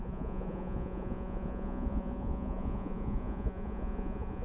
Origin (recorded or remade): remade